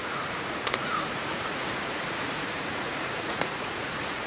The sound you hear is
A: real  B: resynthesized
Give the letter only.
B